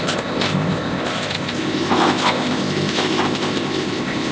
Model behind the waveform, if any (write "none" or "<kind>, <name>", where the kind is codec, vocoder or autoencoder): codec, ZipCodec